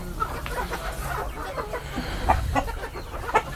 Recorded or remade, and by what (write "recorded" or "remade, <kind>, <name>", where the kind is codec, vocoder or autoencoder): recorded